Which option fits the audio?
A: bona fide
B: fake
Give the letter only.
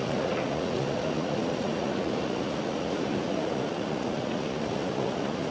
B